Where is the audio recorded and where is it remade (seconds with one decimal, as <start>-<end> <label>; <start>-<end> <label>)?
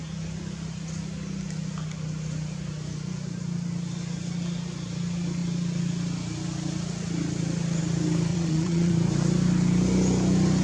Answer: 0.0-8.3 recorded; 8.3-8.9 remade; 8.9-10.6 recorded